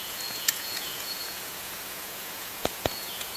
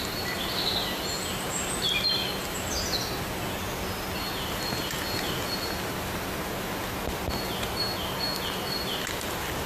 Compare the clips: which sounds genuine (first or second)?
second